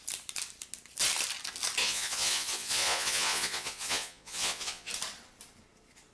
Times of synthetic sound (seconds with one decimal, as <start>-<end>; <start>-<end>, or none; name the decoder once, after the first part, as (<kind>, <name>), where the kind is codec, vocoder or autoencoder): 1.8-4.9 (vocoder, Vocos)